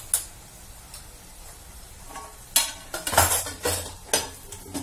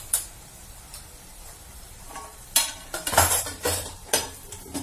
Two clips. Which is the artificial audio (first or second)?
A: second